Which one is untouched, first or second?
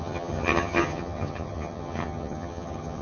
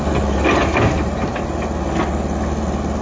second